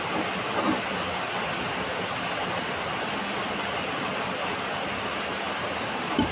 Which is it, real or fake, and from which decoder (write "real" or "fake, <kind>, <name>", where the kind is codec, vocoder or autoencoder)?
real